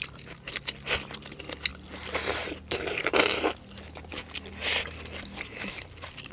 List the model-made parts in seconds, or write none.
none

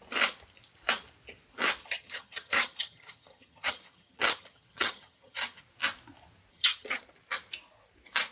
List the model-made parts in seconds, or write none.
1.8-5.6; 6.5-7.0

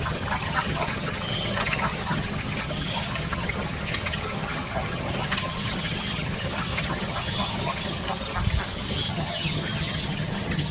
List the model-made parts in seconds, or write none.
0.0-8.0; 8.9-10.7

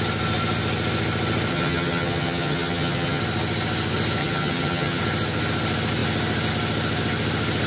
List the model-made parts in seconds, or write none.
1.5-3.2; 4.2-5.0

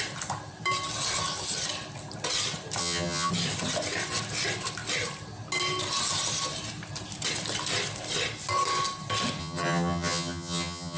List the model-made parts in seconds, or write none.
2.8-3.3; 9.4-11.0

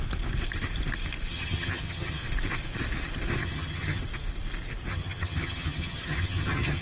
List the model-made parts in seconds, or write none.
1.3-2.2; 3.4-4.0; 4.9-6.8

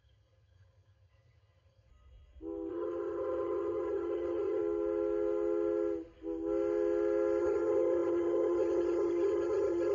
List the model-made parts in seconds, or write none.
0.0-1.9; 2.7-4.6; 7.4-9.9